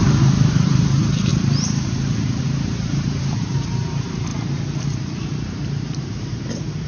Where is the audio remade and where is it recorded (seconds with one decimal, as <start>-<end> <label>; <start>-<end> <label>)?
0.0-4.3 remade; 4.3-4.8 recorded; 4.8-6.9 remade

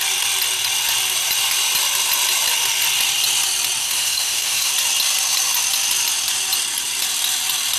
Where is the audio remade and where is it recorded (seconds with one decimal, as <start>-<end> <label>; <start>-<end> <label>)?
0.0-3.8 recorded; 3.8-4.7 remade; 4.7-7.8 recorded

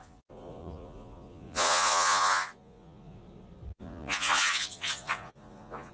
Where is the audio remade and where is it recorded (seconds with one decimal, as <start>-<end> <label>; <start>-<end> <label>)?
0.0-3.2 remade; 3.2-3.7 recorded; 3.7-5.9 remade